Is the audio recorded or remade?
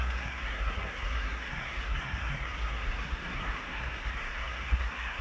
remade